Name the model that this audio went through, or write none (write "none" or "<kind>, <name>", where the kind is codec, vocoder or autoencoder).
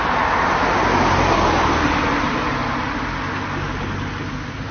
none